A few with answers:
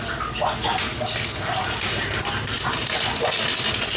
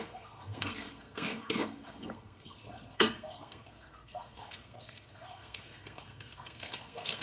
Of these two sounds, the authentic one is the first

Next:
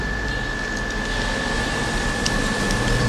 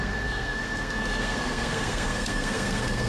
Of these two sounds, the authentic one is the first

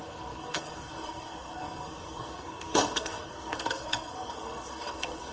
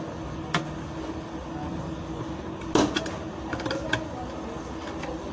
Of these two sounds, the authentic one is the second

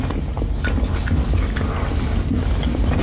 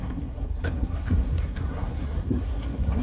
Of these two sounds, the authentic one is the first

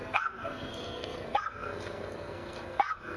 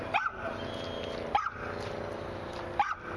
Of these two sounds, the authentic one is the second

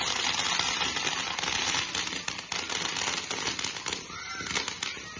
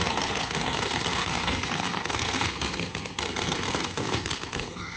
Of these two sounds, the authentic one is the first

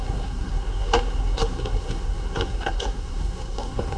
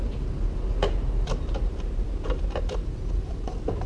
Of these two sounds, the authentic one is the second